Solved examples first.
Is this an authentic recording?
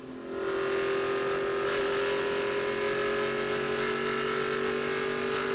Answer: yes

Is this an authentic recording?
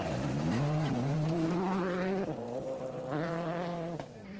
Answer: no